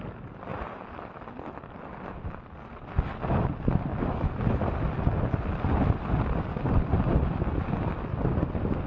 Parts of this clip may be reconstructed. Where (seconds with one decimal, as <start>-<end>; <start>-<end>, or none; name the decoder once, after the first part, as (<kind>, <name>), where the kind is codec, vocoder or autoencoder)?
0.5-1.8 (vocoder, BigVGAN v2); 3.9-6.9